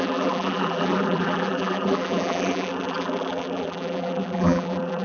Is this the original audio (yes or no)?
no